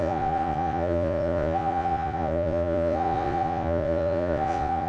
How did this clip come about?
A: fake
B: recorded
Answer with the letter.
A